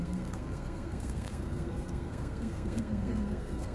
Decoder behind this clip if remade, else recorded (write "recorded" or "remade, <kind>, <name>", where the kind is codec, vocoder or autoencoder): remade, codec, SNAC